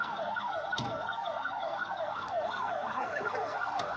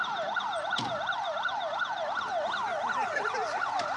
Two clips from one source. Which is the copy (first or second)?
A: first